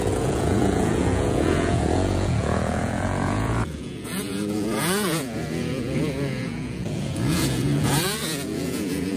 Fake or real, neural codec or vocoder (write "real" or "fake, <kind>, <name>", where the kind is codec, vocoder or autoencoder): fake, vocoder, Vocos